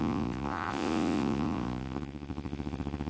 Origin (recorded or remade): remade